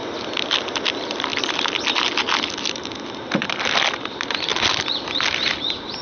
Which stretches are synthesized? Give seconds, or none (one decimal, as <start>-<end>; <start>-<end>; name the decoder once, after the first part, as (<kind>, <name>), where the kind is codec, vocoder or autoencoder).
none